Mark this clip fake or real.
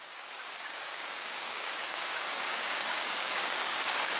fake